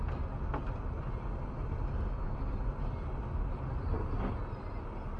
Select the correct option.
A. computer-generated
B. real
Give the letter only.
B